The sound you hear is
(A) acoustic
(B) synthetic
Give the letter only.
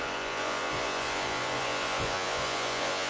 B